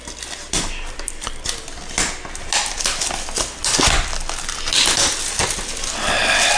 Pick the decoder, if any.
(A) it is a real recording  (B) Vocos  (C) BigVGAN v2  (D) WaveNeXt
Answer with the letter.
A